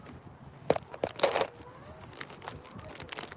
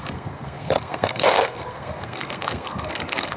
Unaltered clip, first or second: first